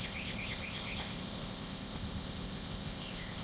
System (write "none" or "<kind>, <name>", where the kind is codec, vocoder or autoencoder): codec, ZipCodec